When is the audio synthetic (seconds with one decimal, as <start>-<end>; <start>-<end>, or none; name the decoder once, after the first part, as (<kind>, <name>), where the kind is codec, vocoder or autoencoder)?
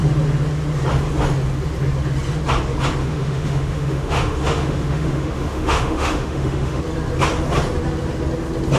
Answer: 3.0-6.8 (autoencoder, DAC-VAE)